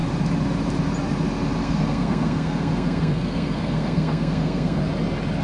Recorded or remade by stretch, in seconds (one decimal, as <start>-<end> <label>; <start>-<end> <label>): 0.0-1.6 recorded; 1.6-4.8 remade; 4.8-5.4 recorded